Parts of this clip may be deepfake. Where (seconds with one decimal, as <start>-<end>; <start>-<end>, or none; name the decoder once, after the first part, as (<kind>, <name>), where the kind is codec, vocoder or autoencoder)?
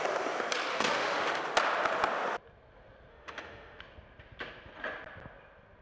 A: 0.7-1.4 (autoencoder, DAC-VAE); 3.1-3.8